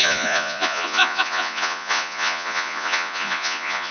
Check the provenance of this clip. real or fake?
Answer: fake